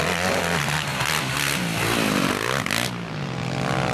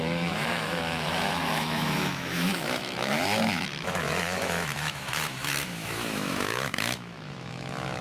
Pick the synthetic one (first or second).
second